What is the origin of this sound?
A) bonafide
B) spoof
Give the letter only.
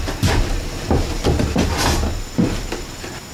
A